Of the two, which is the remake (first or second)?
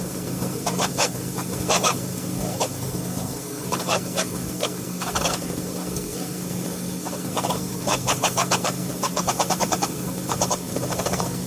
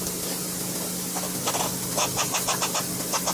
first